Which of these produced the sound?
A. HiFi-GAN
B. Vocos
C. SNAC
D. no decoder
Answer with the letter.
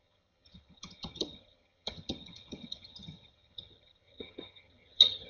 A